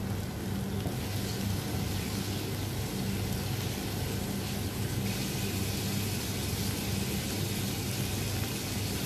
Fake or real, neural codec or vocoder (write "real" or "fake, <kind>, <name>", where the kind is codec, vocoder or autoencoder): real